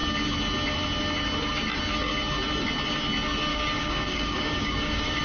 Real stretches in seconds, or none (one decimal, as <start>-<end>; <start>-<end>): 0.0-3.5

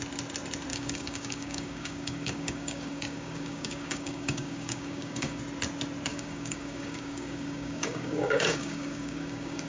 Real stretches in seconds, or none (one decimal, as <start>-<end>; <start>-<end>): 0.0-0.7; 5.4-6.1

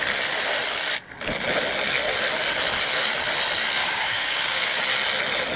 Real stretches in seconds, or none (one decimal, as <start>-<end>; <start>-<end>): 0.0-3.8; 4.8-5.6

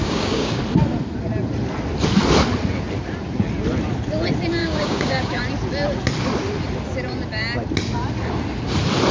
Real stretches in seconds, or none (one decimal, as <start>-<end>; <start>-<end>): 0.6-4.6; 5.4-9.1

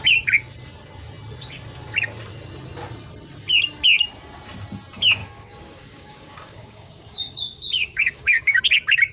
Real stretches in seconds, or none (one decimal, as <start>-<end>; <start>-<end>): 0.0-5.2; 8.6-9.1

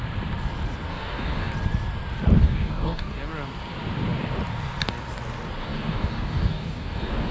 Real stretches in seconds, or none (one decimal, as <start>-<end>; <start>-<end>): 0.0-0.9; 1.5-2.4; 3.2-5.6

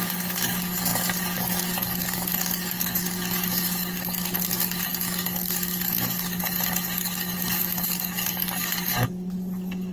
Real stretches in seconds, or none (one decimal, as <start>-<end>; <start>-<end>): none